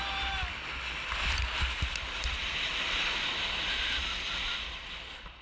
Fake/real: real